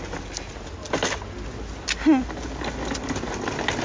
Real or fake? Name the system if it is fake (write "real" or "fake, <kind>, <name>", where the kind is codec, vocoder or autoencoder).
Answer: real